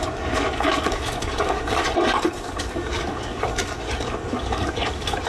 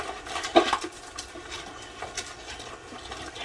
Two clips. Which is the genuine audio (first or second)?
second